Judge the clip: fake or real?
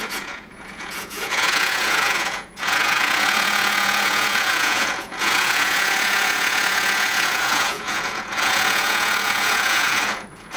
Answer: fake